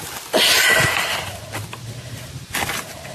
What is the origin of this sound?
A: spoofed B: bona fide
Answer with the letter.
B